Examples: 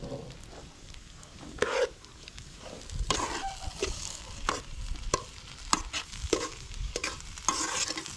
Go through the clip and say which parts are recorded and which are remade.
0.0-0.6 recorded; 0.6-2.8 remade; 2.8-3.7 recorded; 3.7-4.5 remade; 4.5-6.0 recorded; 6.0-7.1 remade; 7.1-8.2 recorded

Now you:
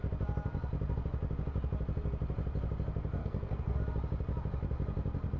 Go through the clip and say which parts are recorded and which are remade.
0.0-3.2 recorded; 3.2-3.8 remade; 3.8-5.4 recorded